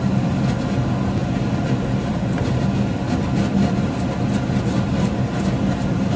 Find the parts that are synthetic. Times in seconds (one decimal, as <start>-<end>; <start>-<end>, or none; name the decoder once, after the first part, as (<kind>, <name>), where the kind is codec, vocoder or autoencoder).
none